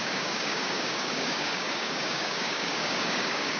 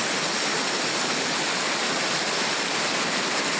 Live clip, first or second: second